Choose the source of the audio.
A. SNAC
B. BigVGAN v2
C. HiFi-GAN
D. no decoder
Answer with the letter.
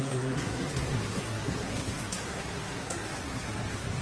A